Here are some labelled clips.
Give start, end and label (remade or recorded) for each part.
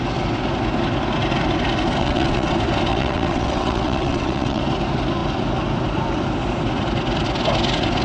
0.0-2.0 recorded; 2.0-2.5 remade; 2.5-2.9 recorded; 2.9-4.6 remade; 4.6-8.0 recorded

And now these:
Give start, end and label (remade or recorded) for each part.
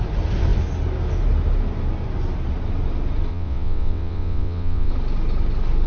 0.0-3.3 recorded; 3.3-4.9 remade; 4.9-5.9 recorded